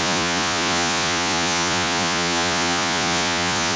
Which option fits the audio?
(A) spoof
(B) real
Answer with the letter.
A